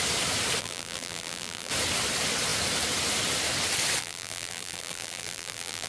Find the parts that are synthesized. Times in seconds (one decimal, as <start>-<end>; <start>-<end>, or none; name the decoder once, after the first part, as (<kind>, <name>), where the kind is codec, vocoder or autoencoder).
0.6-1.7 (vocoder, BigVGAN v2); 4.0-5.9